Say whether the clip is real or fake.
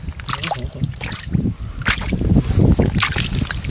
real